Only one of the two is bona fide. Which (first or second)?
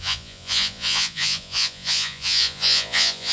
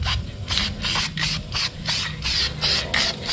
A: second